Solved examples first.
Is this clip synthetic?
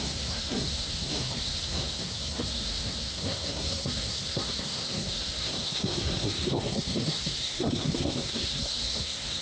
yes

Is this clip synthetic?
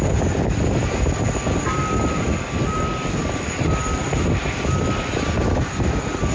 no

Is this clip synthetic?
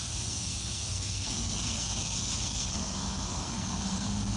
yes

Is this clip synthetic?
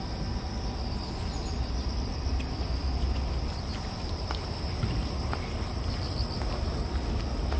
no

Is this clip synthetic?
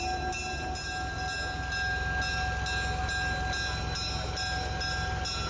no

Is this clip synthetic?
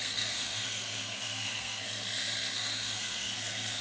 yes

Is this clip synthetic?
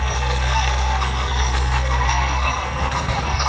yes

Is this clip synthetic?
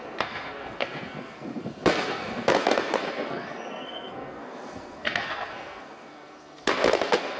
yes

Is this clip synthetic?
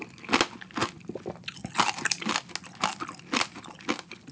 no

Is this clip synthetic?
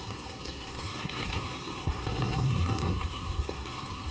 yes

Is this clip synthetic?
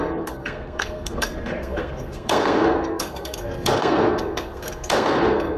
yes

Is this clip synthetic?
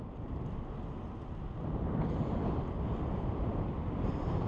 no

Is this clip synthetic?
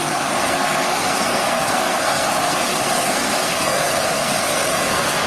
yes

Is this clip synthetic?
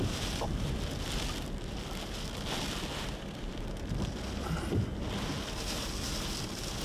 no